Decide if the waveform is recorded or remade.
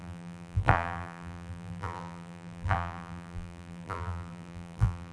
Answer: remade